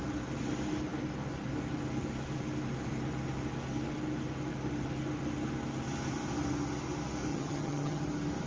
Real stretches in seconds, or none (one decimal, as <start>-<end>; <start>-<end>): 0.0-7.3; 8.0-8.5